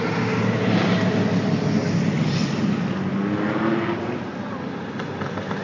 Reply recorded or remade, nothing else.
recorded